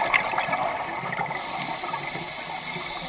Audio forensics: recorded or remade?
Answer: recorded